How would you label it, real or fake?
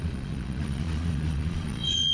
fake